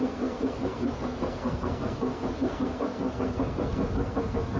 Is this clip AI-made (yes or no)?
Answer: yes